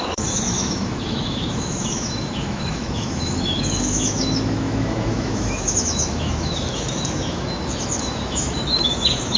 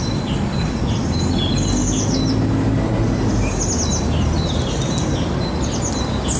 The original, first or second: second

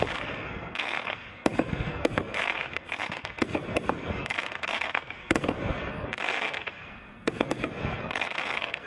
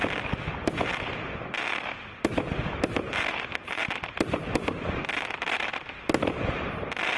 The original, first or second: second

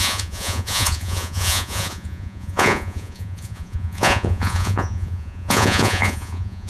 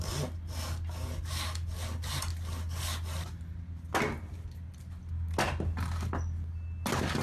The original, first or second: second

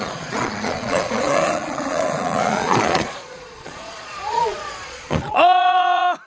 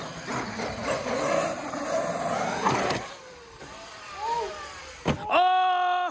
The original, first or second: second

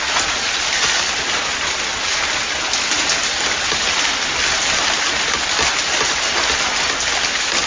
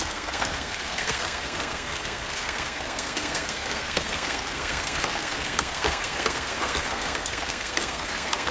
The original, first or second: first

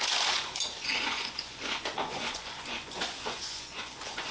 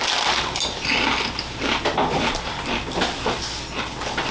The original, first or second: second